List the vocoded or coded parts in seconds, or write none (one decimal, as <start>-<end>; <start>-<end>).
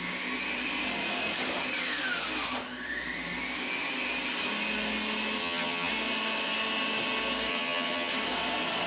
5.4-5.9; 7.5-8.1